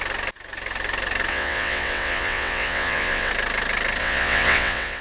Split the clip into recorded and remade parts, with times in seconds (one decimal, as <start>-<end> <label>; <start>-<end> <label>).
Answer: 0.0-1.3 recorded; 1.3-3.3 remade; 3.3-4.0 recorded; 4.0-5.0 remade